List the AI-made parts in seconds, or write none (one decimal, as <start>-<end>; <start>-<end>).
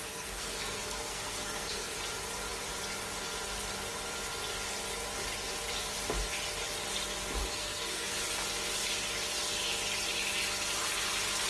0.0-1.9; 7.4-8.2